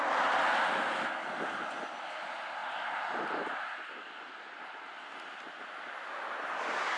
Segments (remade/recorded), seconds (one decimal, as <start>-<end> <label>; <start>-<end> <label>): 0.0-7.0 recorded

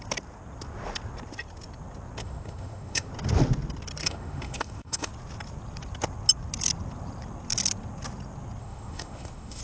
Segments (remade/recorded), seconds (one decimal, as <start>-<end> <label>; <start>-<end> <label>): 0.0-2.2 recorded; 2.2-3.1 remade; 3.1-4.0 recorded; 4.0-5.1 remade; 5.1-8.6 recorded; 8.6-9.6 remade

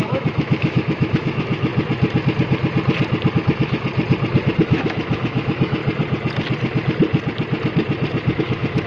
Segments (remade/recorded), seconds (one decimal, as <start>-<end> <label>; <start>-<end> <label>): 0.0-1.7 remade; 1.7-3.3 recorded; 3.3-3.9 remade; 3.9-4.6 recorded; 4.6-5.8 remade; 5.8-8.4 recorded; 8.4-8.9 remade